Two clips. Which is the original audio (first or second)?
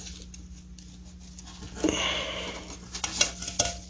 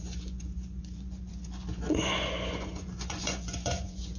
first